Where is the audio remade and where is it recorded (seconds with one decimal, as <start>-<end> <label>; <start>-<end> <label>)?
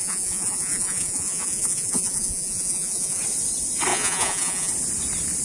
0.0-3.2 remade; 3.2-3.9 recorded; 3.9-4.7 remade; 4.7-5.4 recorded